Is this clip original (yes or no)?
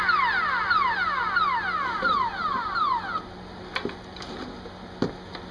yes